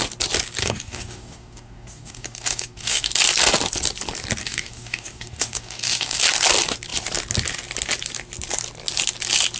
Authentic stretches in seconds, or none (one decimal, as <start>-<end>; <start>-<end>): 0.0-0.6; 3.1-4.4; 6.2-9.6